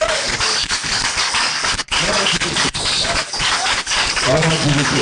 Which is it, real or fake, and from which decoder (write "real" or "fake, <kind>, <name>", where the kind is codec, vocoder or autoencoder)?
fake, codec, DAC